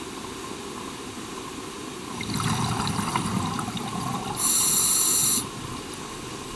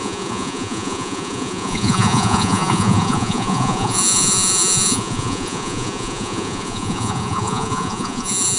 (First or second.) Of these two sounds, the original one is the first